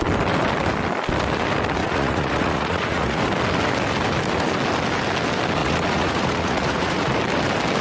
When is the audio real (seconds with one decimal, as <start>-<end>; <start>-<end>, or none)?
0.0-1.8; 3.2-5.6; 7.1-7.8